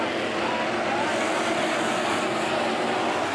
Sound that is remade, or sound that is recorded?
recorded